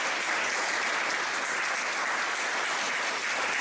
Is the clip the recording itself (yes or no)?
yes